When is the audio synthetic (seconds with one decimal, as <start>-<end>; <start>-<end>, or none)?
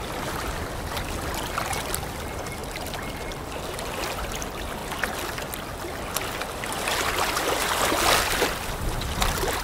none